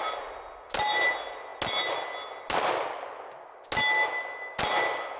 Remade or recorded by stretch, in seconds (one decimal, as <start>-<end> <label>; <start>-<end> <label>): 0.0-5.2 recorded